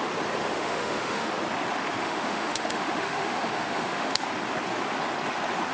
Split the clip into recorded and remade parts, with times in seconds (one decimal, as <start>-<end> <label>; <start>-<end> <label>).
0.0-0.4 recorded; 0.4-1.3 remade; 1.3-2.0 recorded; 2.0-4.2 remade; 4.2-5.7 recorded